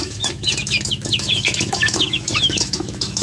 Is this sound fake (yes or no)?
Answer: yes